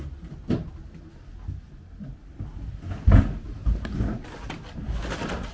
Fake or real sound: real